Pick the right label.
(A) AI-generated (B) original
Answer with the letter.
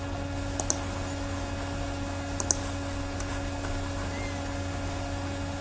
B